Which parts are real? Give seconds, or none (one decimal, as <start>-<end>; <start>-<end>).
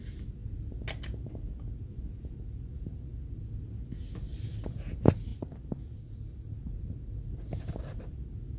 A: 0.0-8.6